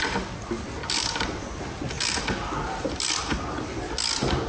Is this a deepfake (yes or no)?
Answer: no